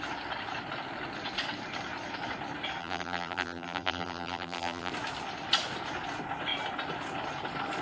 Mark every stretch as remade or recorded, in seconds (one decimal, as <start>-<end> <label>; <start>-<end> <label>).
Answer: 0.0-2.8 recorded; 2.8-4.9 remade; 4.9-7.8 recorded